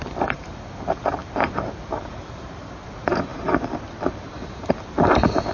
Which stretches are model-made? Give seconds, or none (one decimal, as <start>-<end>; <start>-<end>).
0.0-3.3; 4.3-5.5